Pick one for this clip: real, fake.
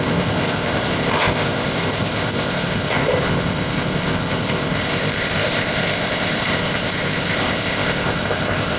fake